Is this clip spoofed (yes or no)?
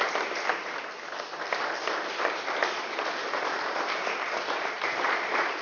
yes